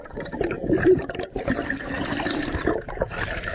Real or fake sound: fake